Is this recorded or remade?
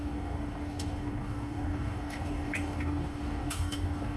remade